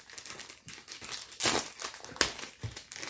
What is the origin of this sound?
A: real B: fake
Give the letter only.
A